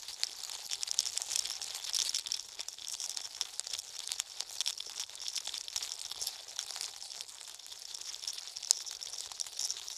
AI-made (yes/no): no